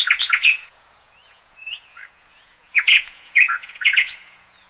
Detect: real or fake fake